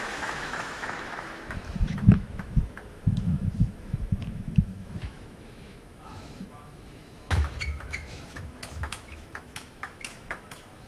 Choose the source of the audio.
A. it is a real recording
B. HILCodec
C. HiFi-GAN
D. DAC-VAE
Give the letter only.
D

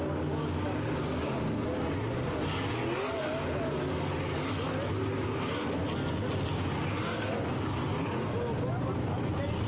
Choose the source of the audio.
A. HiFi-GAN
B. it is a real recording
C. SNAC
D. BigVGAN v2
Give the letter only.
B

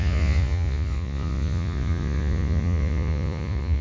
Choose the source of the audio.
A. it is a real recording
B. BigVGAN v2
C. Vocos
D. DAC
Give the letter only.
C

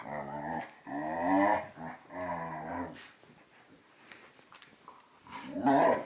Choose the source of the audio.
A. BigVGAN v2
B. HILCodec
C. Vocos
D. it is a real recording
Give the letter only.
D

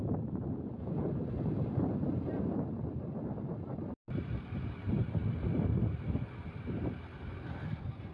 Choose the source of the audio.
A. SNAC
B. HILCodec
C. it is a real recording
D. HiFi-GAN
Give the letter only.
C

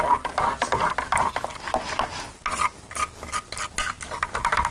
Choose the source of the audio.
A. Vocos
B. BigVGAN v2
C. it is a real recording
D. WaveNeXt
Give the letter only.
C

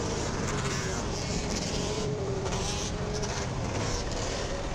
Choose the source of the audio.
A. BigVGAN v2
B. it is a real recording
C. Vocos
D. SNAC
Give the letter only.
A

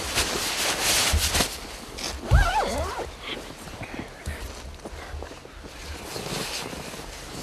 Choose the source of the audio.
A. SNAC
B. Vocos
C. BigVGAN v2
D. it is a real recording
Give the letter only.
D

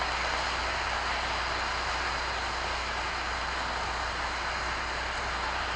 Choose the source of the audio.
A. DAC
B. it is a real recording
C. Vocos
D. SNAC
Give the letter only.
B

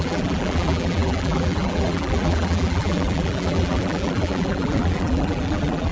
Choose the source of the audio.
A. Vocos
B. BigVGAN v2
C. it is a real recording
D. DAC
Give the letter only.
B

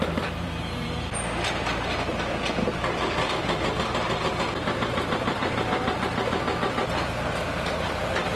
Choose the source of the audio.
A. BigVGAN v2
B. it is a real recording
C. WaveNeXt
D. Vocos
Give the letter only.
A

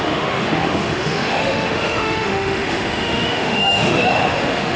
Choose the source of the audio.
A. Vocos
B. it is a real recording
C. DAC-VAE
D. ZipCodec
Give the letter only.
C